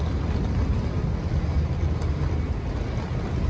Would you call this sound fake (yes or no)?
no